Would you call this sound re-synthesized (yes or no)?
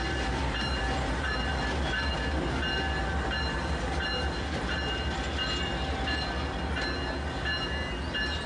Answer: no